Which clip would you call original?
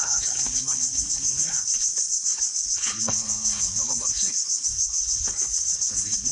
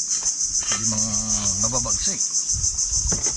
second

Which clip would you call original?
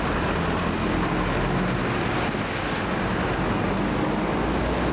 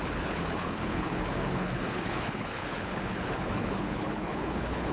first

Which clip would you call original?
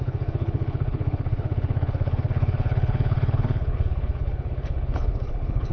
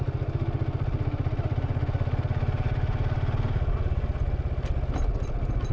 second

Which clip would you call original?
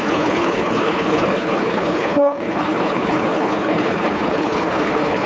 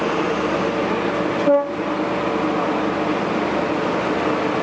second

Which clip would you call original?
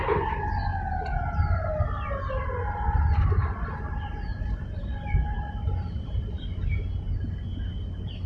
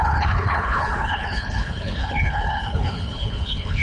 first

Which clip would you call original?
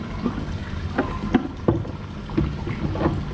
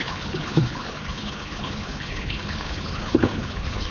first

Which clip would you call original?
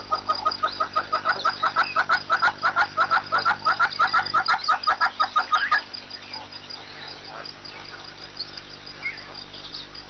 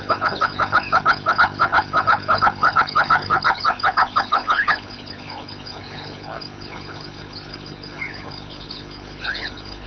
first